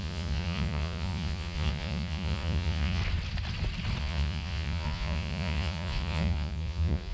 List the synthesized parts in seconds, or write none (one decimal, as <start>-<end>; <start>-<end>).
0.0-3.0; 4.0-7.1